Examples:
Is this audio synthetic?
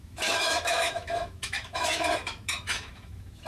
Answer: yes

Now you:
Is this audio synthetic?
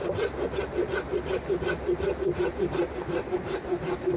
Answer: no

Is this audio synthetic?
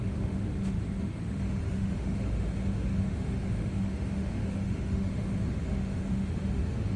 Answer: yes